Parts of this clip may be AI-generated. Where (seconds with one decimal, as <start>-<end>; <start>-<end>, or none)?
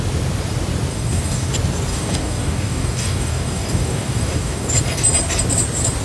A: 0.9-1.5; 1.9-4.7